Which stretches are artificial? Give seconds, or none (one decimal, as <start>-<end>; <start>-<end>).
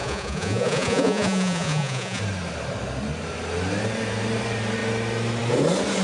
0.0-2.2